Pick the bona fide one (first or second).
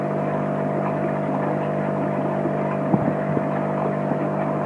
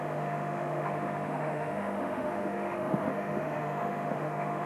first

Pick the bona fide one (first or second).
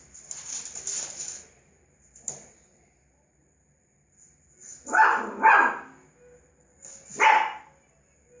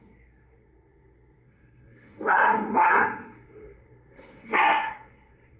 first